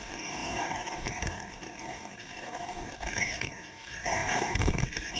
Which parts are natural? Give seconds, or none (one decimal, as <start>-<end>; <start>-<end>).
none